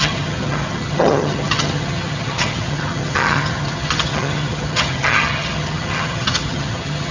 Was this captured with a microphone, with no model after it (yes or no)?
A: no